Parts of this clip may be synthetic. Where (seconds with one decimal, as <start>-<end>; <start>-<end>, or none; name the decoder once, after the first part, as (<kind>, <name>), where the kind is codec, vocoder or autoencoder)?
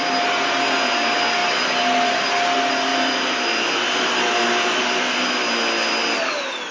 none